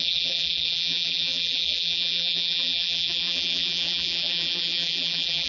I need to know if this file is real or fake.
fake